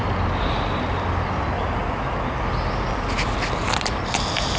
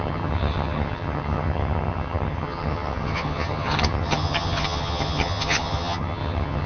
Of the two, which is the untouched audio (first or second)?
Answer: first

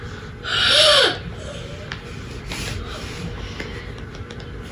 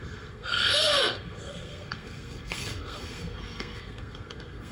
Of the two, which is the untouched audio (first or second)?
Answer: first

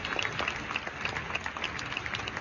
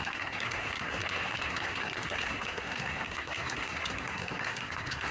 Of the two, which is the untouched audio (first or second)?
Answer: first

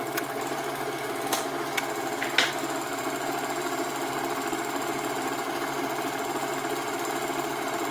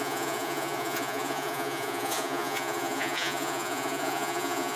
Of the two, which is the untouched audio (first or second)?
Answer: first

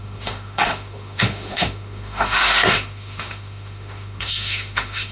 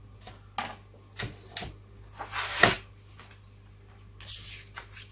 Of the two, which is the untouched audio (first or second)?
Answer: second